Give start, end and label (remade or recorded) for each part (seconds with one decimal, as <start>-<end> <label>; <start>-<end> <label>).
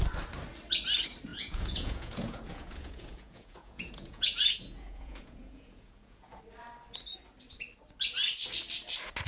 0.0-1.3 recorded; 1.3-6.4 remade; 6.4-9.3 recorded